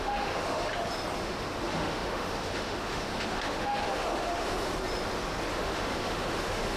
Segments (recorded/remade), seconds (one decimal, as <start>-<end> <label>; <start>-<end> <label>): 0.0-0.7 remade; 0.7-1.2 recorded; 1.2-4.7 remade; 4.7-5.5 recorded; 5.5-6.8 remade